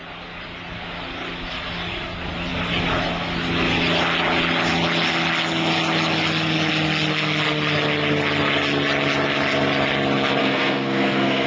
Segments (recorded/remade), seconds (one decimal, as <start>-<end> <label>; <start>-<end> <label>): 0.0-10.4 recorded; 10.4-11.5 remade